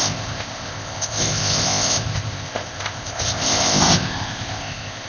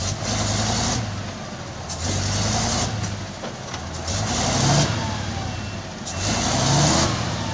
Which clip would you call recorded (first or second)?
second